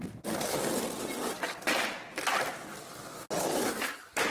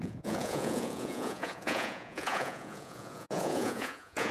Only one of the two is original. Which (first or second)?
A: first